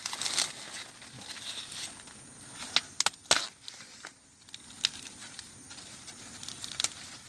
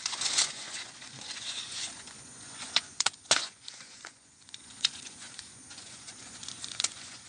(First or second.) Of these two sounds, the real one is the first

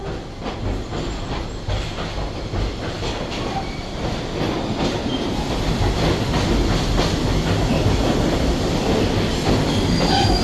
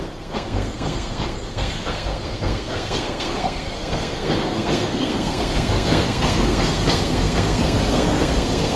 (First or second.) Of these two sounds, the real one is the first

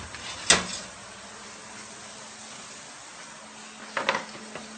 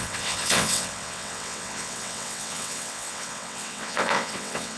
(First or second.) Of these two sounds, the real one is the first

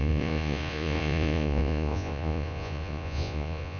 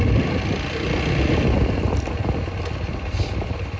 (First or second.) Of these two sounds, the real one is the second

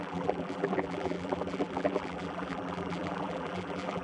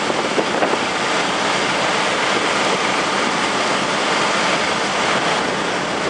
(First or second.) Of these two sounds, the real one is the second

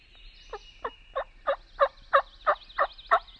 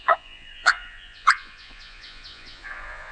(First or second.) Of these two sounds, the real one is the first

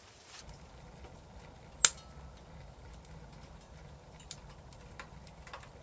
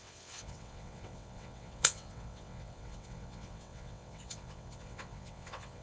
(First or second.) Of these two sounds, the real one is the first